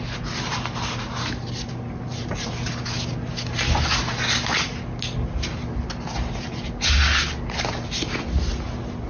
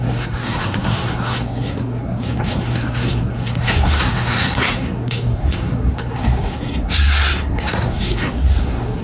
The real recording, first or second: first